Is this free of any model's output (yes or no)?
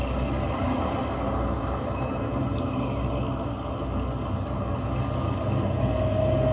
yes